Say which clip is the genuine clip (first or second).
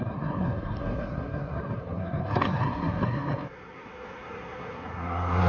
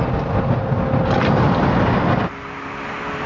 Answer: second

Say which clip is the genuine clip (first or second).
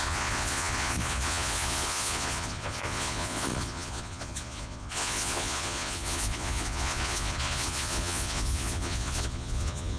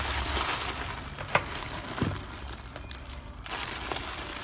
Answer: second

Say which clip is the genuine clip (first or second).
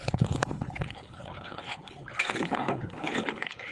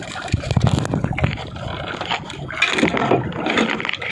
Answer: second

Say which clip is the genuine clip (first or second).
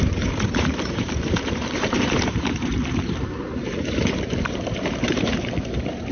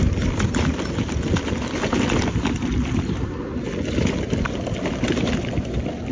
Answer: second